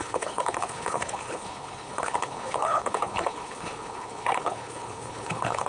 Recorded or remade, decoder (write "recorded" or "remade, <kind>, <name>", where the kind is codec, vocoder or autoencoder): remade, codec, HILCodec